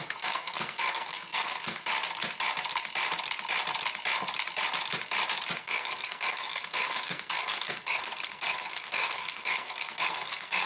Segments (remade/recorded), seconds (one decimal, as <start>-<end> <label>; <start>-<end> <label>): 0.0-1.9 remade; 1.9-5.6 recorded; 5.6-10.7 remade